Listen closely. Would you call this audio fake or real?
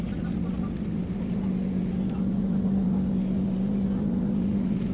real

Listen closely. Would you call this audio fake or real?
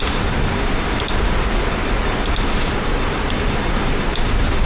real